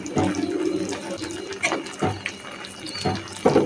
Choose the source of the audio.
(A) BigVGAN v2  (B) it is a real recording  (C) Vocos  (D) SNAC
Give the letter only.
B